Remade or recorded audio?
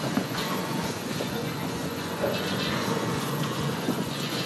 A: remade